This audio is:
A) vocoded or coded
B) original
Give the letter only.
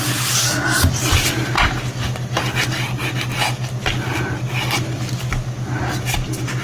B